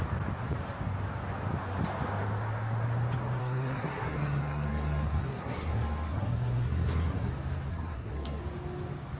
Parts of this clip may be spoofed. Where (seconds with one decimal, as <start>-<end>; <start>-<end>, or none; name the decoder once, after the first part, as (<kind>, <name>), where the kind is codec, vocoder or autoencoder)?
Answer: 3.4-7.3 (codec, SNAC); 7.7-8.4